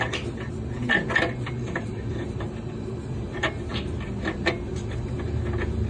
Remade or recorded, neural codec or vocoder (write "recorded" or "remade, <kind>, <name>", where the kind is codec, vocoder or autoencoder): recorded